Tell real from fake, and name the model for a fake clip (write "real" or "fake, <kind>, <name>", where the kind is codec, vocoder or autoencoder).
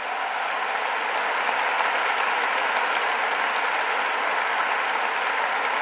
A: real